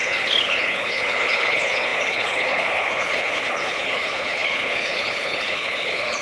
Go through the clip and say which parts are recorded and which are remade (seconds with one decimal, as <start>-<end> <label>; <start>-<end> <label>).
0.0-6.2 remade